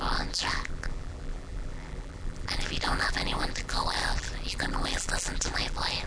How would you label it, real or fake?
fake